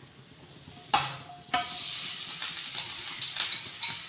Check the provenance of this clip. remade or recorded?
recorded